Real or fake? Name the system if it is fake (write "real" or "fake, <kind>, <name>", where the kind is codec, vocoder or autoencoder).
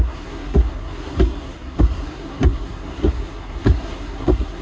fake, codec, SNAC